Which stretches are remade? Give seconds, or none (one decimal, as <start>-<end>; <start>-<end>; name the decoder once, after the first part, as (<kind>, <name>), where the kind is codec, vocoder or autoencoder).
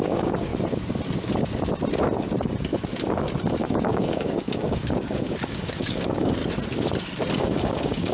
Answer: 0.0-0.5 (codec, DAC); 3.6-6.4; 7.3-8.1